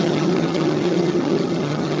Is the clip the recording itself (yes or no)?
no